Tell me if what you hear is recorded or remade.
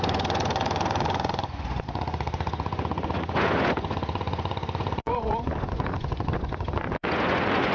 remade